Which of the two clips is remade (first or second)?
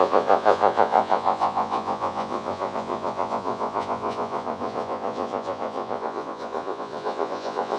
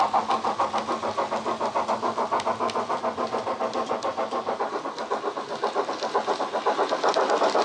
first